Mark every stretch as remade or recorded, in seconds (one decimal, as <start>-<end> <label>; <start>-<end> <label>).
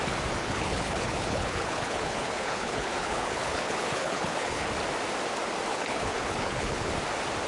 0.0-0.4 recorded; 0.4-4.7 remade; 4.7-5.7 recorded; 5.7-6.9 remade; 6.9-7.5 recorded